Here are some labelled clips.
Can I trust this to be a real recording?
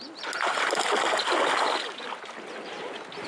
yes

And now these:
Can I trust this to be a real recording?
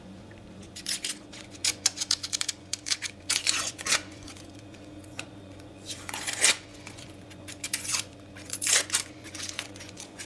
no